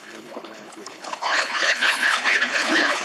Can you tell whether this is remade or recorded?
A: remade